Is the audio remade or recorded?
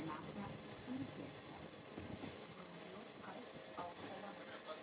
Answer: recorded